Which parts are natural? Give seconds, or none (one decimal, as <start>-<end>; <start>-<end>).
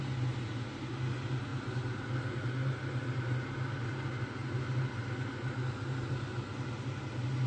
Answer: 0.0-7.5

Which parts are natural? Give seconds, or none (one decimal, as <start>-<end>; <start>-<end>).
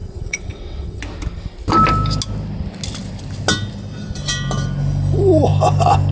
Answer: 1.0-6.1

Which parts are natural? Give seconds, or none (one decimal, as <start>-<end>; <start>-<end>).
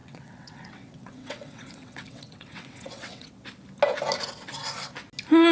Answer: 3.3-5.5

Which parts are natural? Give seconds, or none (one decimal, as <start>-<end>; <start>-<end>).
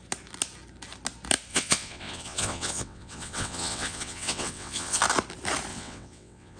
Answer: 0.0-1.5; 5.0-5.7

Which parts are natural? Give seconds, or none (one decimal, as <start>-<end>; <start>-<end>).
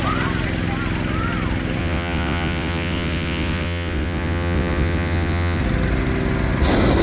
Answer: 0.0-1.8; 5.6-7.0